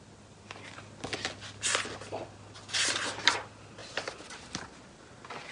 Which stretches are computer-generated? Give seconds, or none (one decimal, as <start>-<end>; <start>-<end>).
none